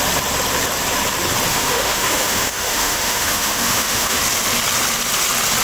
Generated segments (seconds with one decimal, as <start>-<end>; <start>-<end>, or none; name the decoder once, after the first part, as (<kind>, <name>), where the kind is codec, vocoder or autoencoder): 1.5-4.2 (autoencoder, DAC-VAE)